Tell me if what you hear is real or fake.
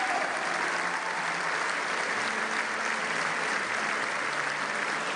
real